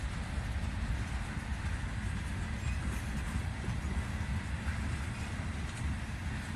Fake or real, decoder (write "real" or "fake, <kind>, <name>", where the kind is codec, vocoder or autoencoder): real